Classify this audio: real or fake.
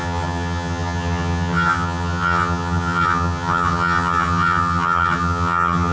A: fake